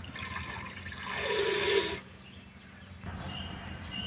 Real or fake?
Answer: real